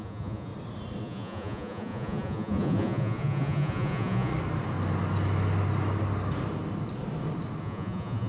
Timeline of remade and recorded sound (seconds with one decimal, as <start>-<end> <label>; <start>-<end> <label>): 0.0-0.5 remade; 0.5-1.0 recorded; 1.0-4.3 remade; 4.3-7.6 recorded; 7.6-8.3 remade